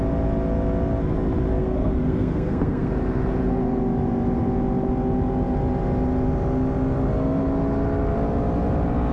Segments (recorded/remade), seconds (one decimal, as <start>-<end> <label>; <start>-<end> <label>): 0.0-1.6 recorded; 1.6-2.9 remade; 2.9-9.1 recorded

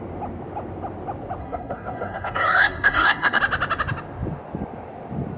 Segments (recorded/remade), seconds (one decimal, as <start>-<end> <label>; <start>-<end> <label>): 0.0-1.4 recorded; 1.4-3.4 remade; 3.4-5.4 recorded

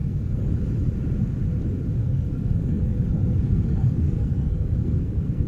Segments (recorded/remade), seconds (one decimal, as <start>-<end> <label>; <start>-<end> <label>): 0.0-0.5 remade; 0.5-2.0 recorded; 2.0-5.5 remade

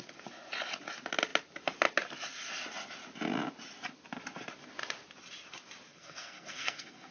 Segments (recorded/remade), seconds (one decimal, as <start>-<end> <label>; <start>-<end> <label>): 0.0-5.9 recorded; 5.9-7.1 remade

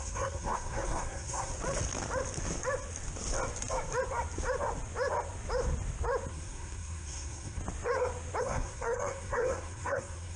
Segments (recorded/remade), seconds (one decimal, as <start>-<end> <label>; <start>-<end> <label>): 0.0-1.5 remade; 1.5-6.3 recorded; 6.3-7.6 remade; 7.6-8.4 recorded; 8.4-10.4 remade